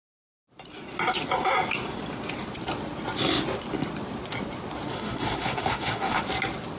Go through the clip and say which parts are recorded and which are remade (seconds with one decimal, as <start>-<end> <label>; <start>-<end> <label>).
0.0-4.9 recorded; 4.9-6.2 remade; 6.2-6.8 recorded